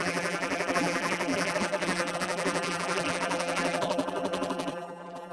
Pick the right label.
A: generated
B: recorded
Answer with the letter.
A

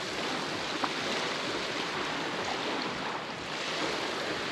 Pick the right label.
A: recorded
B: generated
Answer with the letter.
A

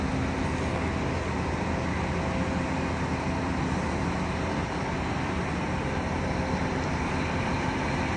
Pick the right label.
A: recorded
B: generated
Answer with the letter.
A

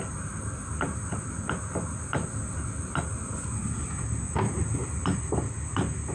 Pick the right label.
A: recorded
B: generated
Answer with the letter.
A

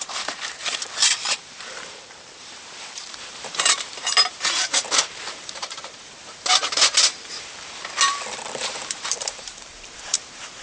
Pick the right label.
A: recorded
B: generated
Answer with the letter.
B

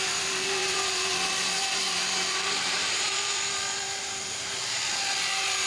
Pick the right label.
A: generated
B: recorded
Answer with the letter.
A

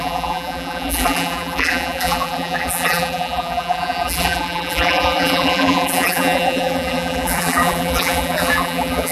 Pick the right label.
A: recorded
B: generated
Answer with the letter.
B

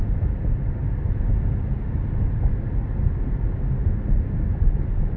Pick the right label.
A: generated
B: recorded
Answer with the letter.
B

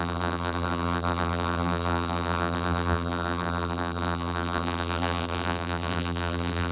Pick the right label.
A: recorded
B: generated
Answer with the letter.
B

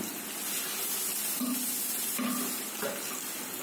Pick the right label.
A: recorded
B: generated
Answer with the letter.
A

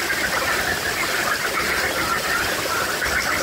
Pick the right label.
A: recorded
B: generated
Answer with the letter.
B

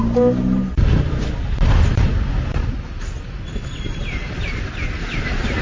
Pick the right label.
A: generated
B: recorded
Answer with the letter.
B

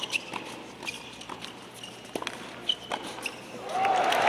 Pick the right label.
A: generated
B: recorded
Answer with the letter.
B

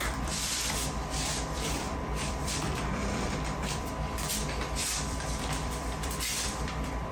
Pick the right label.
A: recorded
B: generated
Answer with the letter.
B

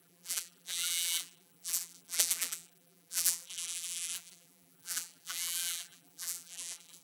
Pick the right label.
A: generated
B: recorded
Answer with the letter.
A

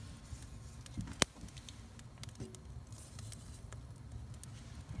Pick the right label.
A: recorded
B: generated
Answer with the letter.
A